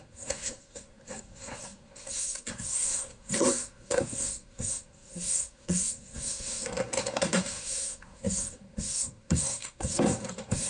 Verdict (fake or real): fake